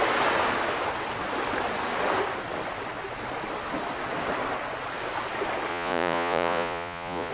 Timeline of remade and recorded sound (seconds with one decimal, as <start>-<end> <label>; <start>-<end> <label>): 0.0-5.7 recorded; 5.7-7.3 remade

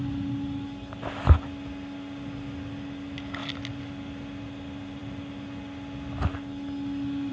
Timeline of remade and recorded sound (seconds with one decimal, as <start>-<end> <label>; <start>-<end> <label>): 0.0-7.3 recorded

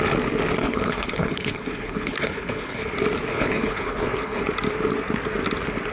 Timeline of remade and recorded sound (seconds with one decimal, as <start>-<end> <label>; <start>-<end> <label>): 0.0-0.6 recorded; 0.6-2.9 remade; 2.9-3.3 recorded; 3.3-4.4 remade; 4.4-5.9 recorded

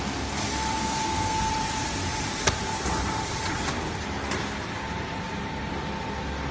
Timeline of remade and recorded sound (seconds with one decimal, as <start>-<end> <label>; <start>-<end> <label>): 0.0-0.8 recorded; 0.8-1.5 remade; 1.5-6.5 recorded

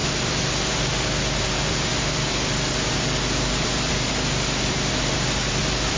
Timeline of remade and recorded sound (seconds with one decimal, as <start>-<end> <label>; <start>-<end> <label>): 0.0-6.0 remade